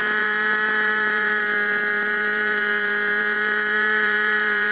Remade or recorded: remade